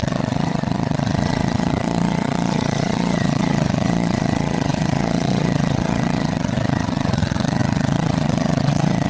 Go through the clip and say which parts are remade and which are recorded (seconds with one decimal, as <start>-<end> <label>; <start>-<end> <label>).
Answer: 0.0-9.1 remade